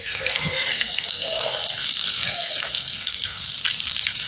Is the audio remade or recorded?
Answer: remade